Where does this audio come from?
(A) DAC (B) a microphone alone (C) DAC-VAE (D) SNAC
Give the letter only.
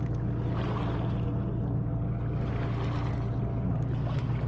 B